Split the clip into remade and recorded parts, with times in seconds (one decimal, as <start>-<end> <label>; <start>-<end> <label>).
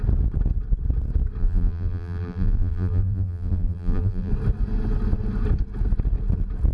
0.0-1.4 recorded; 1.4-4.3 remade; 4.3-6.7 recorded